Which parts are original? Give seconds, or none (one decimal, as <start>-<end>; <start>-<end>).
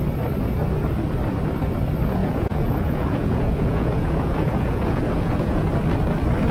0.0-2.2; 5.7-6.5